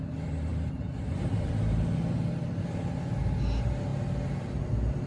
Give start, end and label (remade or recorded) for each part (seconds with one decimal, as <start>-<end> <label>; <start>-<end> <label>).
0.0-5.1 recorded